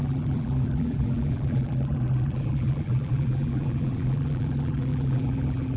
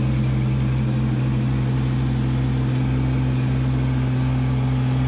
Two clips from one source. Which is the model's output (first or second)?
first